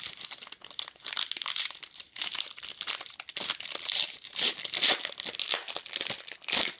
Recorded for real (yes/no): yes